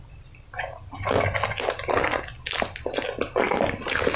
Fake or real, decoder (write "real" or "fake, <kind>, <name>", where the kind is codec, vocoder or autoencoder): real